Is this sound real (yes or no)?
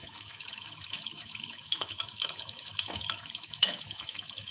no